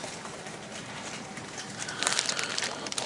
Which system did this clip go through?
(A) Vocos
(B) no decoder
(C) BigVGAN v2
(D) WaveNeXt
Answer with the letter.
C